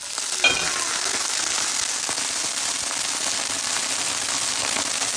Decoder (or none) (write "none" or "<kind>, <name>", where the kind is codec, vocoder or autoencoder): none